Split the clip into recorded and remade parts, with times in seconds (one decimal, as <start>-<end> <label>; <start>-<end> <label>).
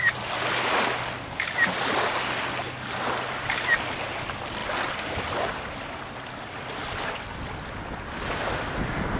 0.0-4.6 recorded; 4.6-5.2 remade; 5.2-9.2 recorded